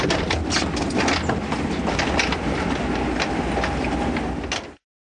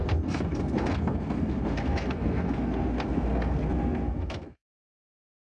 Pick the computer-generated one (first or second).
second